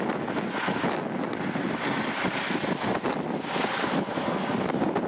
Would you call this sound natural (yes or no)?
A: yes